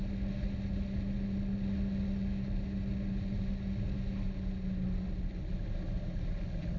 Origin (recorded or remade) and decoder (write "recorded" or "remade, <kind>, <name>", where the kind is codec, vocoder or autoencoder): recorded